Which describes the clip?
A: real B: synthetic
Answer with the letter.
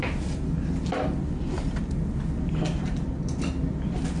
A